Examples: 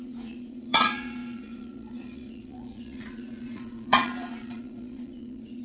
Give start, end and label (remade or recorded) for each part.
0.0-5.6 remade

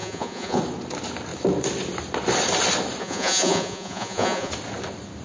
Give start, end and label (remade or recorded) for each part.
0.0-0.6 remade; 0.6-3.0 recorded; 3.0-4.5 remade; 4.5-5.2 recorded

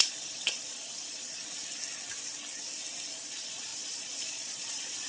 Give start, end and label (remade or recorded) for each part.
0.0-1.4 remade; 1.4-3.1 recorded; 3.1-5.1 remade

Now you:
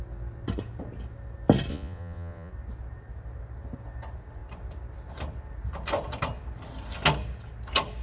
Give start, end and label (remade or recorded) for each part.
0.0-1.7 recorded; 1.7-2.5 remade; 2.5-8.0 recorded

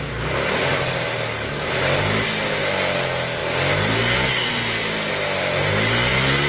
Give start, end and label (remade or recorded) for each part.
0.0-6.5 recorded

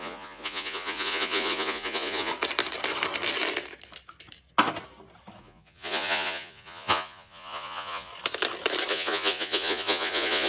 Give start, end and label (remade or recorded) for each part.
0.0-2.3 remade; 2.3-5.4 recorded; 5.4-8.1 remade; 8.1-8.9 recorded; 8.9-10.5 remade

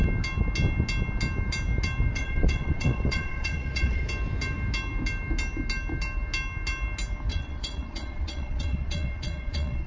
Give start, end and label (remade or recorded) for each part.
0.0-2.1 recorded; 2.1-4.0 remade; 4.0-7.3 recorded; 7.3-9.9 remade